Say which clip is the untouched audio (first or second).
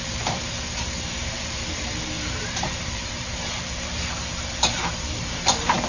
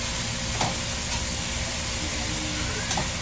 second